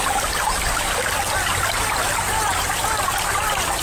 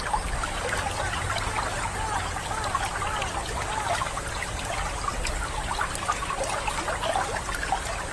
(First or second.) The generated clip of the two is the first